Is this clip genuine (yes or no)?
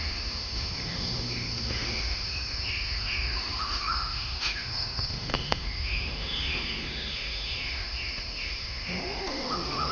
no